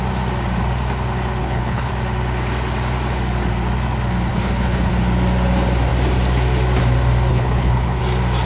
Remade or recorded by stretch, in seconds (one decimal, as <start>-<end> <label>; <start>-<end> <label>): 0.0-1.4 recorded; 1.4-1.9 remade; 1.9-4.3 recorded; 4.3-4.9 remade; 4.9-7.3 recorded; 7.3-8.0 remade; 8.0-8.5 recorded